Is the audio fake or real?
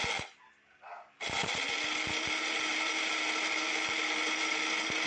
real